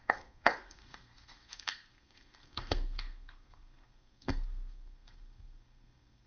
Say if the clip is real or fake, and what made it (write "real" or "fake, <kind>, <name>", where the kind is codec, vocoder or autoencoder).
fake, codec, SNAC